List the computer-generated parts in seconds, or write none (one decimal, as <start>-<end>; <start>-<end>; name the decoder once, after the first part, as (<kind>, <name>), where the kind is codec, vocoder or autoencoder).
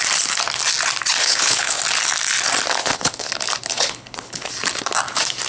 1.2-1.8 (codec, HILCodec); 2.8-3.3; 3.7-4.5